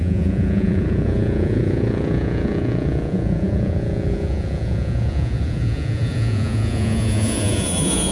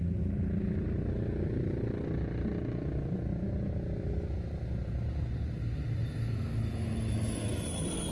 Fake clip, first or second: first